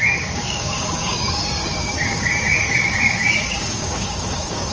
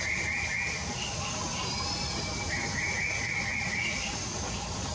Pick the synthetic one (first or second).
first